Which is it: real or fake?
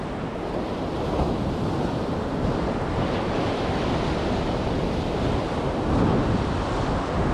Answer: real